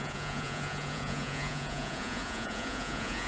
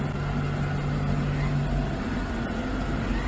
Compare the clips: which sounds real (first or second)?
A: second